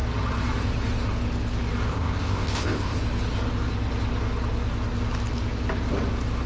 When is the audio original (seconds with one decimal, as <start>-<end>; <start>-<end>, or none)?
0.0-1.9; 3.0-6.5